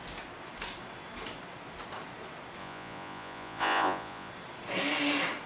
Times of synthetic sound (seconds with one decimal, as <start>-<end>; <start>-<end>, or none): 2.6-4.3

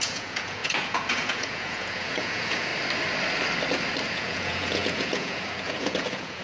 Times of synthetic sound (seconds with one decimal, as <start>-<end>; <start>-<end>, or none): 0.0-2.7; 4.1-6.4

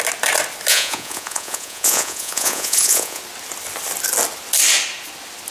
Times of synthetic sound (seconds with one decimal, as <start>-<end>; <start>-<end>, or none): 0.7-3.2